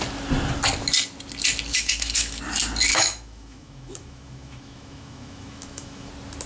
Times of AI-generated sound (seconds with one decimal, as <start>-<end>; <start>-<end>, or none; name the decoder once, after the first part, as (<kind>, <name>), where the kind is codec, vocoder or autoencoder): 1.7-2.4 (autoencoder, DAC-VAE); 2.9-6.1